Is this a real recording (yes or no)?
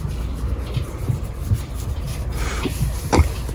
yes